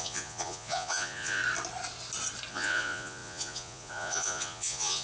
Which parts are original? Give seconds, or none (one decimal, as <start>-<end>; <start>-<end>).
1.4-2.5